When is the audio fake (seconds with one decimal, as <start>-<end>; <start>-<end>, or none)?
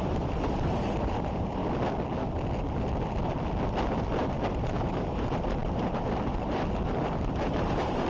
0.0-1.6; 4.5-8.1